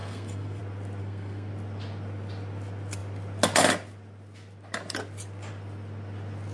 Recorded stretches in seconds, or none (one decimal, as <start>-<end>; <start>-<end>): 0.6-1.0; 1.5-6.5